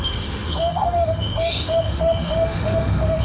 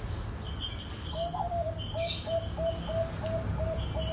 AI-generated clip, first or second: first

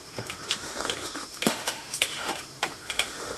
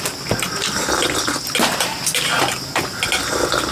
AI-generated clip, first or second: first